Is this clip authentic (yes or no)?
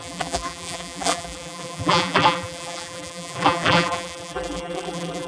no